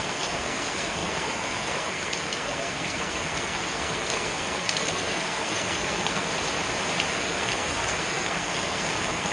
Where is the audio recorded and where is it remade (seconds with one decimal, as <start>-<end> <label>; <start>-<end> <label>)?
0.0-6.3 remade; 6.3-7.1 recorded; 7.1-9.3 remade